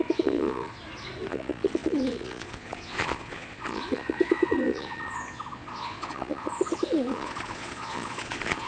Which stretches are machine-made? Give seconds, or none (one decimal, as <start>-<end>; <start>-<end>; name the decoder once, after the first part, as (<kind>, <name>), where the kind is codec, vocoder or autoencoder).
0.0-0.8 (vocoder, Vocos); 1.3-8.7